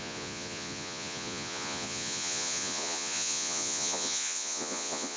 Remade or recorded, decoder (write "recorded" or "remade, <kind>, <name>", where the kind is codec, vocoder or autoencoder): remade, vocoder, Vocos